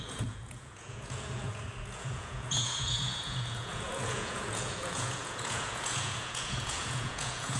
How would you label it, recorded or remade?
remade